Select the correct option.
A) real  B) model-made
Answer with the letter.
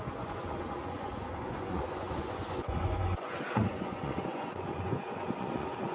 B